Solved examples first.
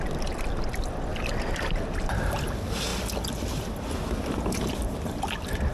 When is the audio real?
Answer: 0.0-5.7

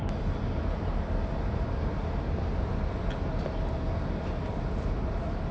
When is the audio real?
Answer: 0.0-5.5

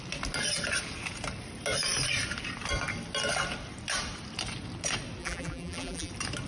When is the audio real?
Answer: 0.0-5.2; 6.1-6.5